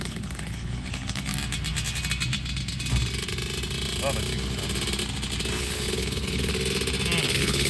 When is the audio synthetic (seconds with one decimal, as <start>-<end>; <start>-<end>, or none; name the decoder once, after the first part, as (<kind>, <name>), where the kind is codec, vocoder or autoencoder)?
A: 0.0-1.3 (codec, HILCodec); 5.6-6.5; 7.2-7.7